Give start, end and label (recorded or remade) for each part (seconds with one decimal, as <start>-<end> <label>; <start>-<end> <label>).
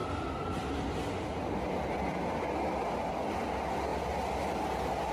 0.0-5.1 recorded